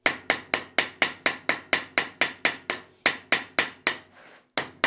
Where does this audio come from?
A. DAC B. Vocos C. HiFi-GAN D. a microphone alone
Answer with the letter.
D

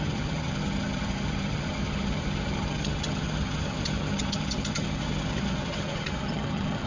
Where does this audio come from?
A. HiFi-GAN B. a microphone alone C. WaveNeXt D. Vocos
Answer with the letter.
A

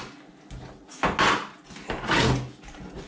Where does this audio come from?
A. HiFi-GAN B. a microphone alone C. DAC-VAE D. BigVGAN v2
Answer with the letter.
B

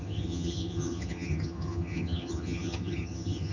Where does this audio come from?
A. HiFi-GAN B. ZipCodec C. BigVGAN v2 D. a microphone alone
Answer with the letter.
A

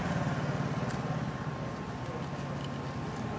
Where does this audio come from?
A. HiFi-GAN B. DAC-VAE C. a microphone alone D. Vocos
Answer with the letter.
C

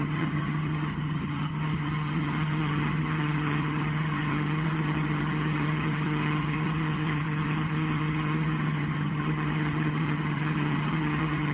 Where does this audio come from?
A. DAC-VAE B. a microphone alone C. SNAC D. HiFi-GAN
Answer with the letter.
D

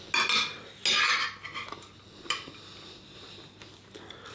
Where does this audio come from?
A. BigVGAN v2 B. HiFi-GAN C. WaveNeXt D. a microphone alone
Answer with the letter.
D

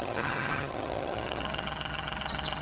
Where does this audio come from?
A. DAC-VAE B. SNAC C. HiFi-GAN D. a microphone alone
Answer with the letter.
C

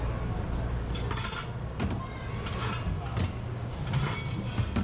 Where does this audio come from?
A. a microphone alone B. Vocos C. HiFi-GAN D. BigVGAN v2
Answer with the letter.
A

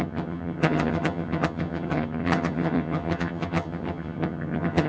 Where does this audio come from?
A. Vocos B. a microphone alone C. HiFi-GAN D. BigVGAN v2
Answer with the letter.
C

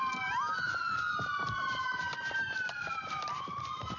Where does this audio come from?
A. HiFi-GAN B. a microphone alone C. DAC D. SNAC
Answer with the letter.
B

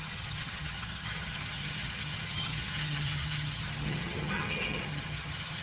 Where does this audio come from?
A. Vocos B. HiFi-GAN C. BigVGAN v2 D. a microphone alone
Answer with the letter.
B